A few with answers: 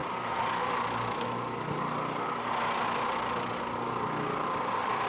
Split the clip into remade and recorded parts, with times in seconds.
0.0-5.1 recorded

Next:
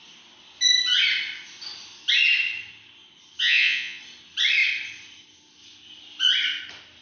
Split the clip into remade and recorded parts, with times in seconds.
0.0-3.4 recorded; 3.4-4.0 remade; 4.0-7.0 recorded

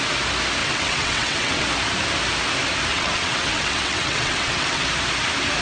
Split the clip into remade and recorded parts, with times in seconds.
0.0-0.6 recorded; 0.6-1.6 remade; 1.6-2.9 recorded; 2.9-4.9 remade; 4.9-5.6 recorded

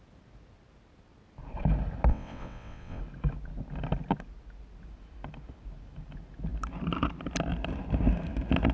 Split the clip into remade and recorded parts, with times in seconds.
0.0-2.1 recorded; 2.1-3.0 remade; 3.0-8.7 recorded

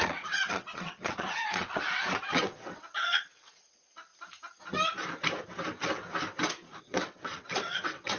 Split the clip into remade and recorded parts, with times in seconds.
0.0-4.1 remade; 4.1-6.8 recorded; 6.8-8.2 remade

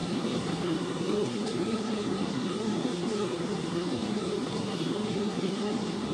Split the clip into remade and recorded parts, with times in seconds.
0.0-6.1 remade